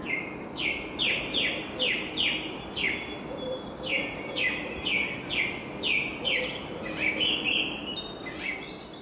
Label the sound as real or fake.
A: real